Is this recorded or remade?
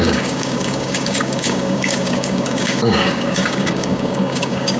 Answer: remade